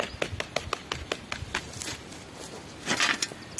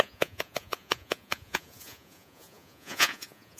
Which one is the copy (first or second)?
second